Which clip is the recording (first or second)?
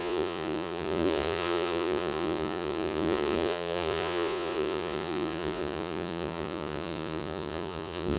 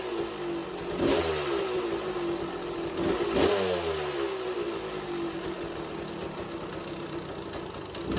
second